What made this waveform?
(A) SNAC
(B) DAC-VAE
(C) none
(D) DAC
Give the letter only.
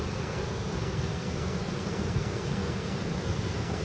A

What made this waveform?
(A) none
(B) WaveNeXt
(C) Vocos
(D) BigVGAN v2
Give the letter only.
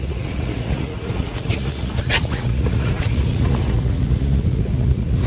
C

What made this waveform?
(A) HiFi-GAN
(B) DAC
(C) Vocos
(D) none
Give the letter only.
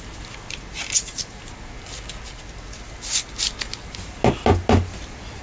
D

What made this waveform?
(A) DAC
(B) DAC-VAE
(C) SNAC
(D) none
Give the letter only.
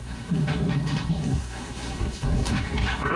C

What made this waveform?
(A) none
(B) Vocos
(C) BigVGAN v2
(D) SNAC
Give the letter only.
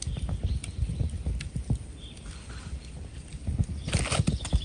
A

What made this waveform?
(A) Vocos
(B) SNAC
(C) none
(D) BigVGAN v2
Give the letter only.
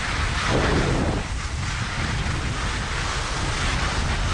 C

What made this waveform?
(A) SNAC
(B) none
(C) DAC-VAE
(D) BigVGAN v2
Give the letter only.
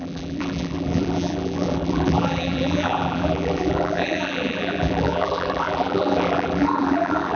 D